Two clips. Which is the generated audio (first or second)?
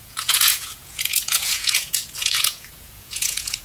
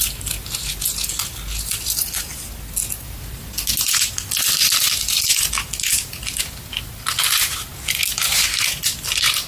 first